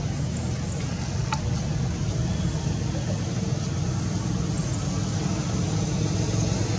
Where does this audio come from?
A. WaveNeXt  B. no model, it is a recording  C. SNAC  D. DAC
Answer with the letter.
B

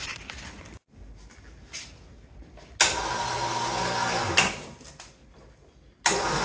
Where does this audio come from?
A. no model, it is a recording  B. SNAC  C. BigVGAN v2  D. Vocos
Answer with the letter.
A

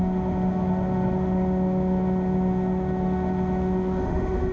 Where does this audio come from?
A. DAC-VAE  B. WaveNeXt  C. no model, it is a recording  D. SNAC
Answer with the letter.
A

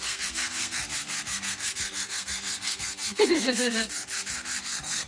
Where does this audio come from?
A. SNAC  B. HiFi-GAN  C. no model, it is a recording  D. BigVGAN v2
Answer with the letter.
A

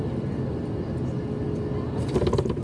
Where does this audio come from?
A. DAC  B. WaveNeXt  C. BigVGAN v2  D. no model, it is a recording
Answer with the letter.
D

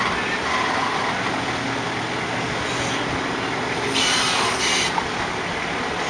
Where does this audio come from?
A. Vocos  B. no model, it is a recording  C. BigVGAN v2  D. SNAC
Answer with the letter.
B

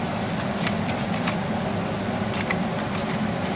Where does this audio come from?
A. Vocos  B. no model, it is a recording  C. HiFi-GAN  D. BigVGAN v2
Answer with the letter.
B